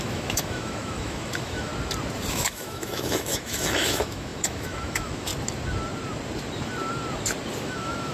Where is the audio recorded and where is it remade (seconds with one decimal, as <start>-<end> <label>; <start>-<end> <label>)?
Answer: 0.0-1.7 remade; 1.7-2.3 recorded; 2.3-5.3 remade; 5.3-7.6 recorded; 7.6-8.1 remade